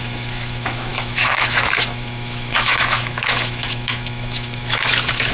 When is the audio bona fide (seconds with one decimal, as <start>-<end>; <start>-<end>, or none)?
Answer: none